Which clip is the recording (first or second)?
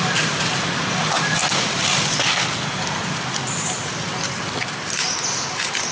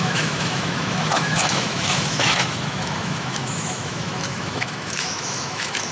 first